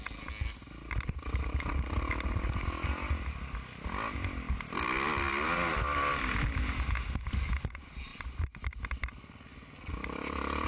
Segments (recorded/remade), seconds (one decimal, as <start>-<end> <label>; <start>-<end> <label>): 0.0-10.7 recorded